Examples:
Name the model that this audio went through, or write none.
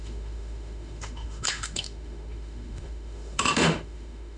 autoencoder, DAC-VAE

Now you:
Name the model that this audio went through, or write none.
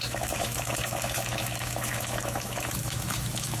autoencoder, DAC-VAE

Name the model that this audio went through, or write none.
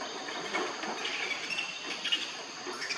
none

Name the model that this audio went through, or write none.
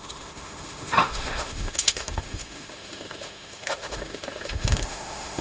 autoencoder, DAC-VAE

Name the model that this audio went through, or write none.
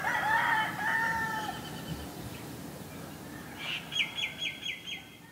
none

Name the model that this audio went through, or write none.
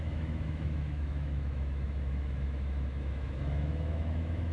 autoencoder, DAC-VAE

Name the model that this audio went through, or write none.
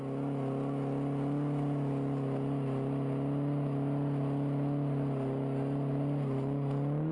none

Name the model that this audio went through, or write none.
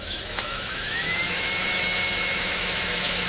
autoencoder, DAC-VAE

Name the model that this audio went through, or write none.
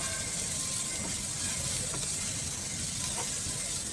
none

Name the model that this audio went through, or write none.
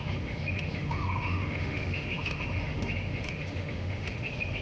autoencoder, DAC-VAE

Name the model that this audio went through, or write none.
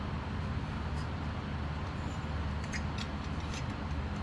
none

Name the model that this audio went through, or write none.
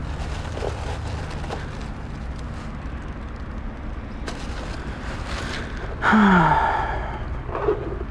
none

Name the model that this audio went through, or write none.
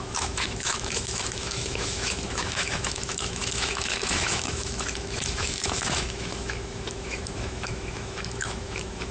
autoencoder, DAC-VAE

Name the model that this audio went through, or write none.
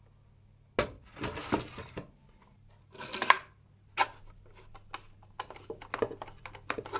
none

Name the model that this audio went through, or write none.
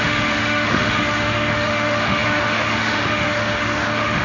autoencoder, DAC-VAE